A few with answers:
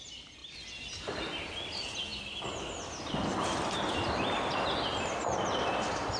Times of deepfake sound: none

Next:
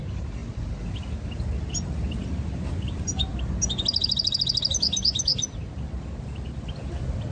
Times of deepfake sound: none

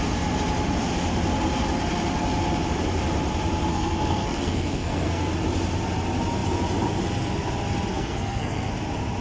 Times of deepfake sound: 3.7-5.3 (codec, SNAC); 7.9-8.7

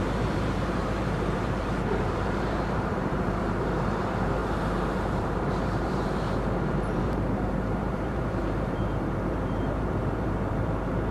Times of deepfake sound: 0.0-11.1 (vocoder, BigVGAN v2)

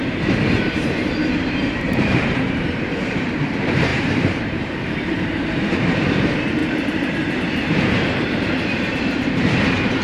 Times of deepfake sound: 0.0-6.6 (vocoder, BigVGAN v2); 7.7-10.0

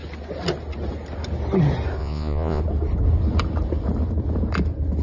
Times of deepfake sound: 2.0-2.6 (vocoder, Vocos)

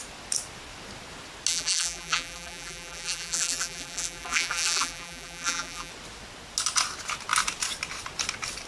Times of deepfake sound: 1.5-5.9 (vocoder, BigVGAN v2)